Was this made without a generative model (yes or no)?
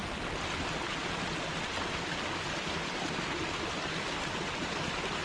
yes